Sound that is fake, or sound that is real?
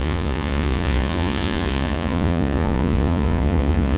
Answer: fake